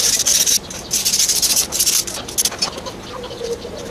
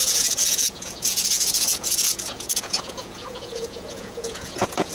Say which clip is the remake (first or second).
second